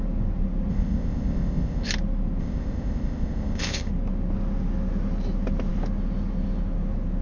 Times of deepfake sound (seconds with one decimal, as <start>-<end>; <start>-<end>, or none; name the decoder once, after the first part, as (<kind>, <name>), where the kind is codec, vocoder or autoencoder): 0.7-1.9 (codec, ZipCodec); 2.4-3.9